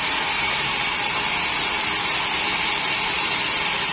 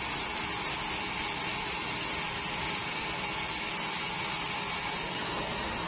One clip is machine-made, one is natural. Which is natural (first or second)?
second